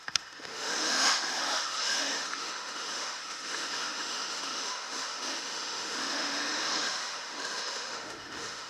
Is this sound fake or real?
fake